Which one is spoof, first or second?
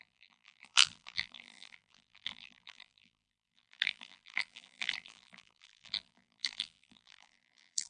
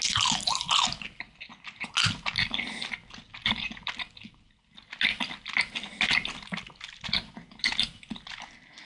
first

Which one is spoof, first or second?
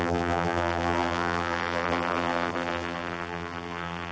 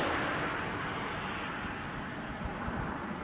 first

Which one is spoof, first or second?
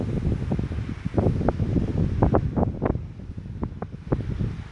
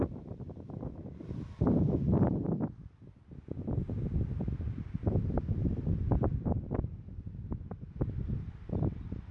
second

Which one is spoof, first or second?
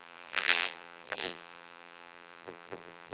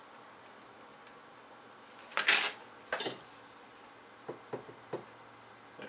first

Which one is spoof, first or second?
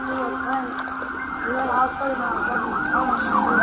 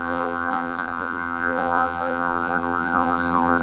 second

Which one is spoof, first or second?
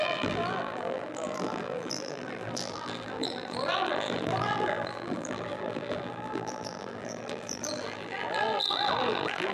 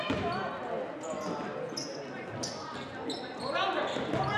first